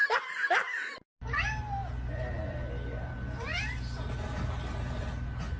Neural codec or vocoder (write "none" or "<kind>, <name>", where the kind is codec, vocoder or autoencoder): none